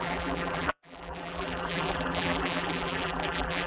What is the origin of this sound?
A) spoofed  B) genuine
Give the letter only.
A